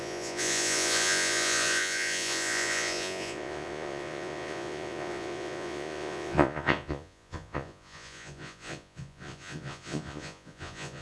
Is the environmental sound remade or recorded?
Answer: remade